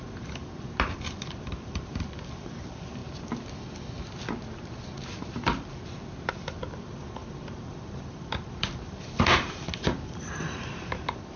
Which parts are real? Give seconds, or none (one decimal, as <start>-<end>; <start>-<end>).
3.0-6.3